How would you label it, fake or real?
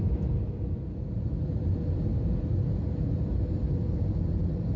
real